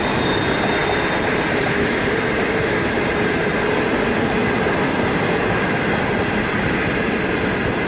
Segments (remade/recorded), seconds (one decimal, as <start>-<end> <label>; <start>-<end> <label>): 0.0-7.9 recorded